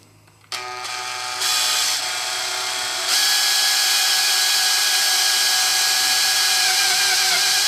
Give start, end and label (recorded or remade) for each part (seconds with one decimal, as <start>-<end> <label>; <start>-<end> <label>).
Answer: 0.0-5.7 recorded; 5.7-7.0 remade; 7.0-7.7 recorded